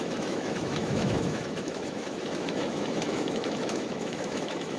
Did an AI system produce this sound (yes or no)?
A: yes